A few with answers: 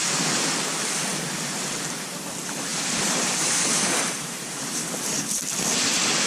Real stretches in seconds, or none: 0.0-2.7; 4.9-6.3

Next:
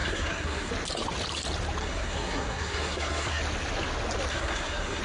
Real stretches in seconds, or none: 0.7-1.8; 3.4-4.3

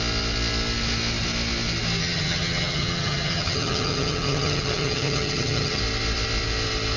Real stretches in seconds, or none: 0.0-2.0; 5.8-7.0

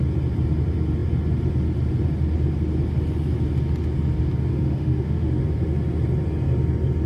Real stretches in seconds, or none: 0.0-4.5; 5.4-7.1